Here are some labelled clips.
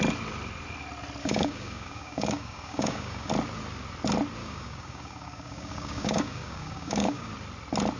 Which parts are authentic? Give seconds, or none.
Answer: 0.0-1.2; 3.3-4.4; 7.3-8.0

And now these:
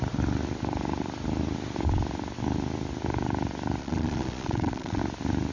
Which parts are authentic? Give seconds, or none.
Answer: 0.0-3.8; 5.0-5.5

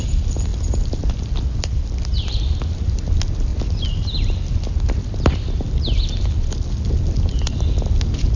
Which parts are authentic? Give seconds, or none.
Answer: 0.5-1.0; 3.5-6.9

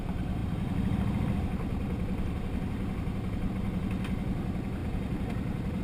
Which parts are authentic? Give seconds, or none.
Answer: none